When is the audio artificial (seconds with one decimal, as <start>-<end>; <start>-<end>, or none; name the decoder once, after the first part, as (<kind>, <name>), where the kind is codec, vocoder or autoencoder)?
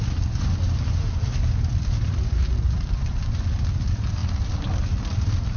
none